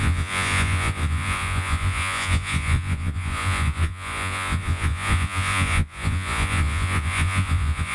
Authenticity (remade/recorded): remade